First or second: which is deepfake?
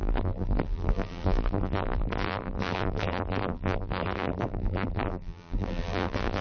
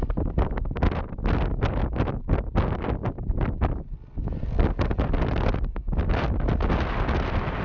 first